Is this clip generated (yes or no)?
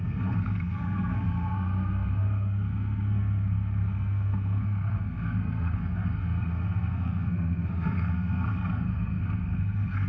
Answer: yes